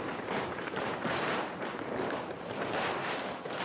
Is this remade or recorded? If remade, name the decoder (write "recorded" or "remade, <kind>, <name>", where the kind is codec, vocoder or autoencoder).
remade, vocoder, BigVGAN v2